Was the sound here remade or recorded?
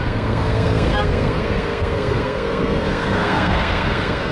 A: remade